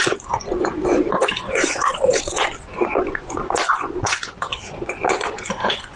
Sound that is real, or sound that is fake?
fake